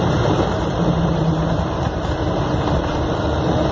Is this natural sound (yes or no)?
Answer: no